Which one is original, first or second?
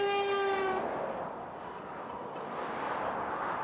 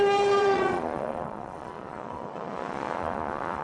first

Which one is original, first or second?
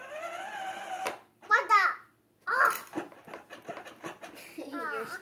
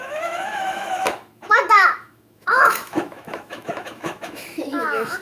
first